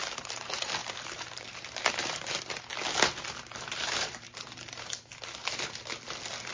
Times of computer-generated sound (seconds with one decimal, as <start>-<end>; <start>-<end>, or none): 0.0-2.7; 3.4-5.1